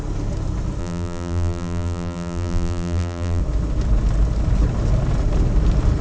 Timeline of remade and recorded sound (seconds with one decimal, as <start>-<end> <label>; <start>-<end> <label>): 0.0-0.8 recorded; 0.8-3.4 remade; 3.4-6.0 recorded